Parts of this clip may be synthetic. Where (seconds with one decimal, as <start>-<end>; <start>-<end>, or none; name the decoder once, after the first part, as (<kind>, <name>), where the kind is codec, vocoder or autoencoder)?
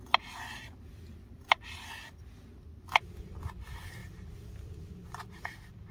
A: none